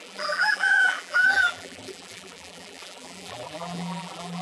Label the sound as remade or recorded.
remade